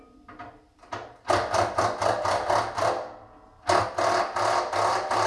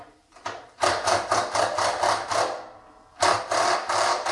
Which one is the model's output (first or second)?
second